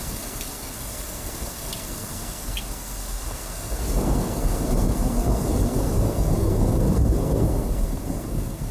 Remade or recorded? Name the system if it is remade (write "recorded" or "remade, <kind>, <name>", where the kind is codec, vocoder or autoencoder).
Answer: remade, codec, SNAC